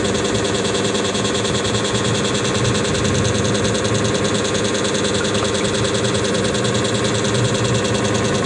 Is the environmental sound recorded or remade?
recorded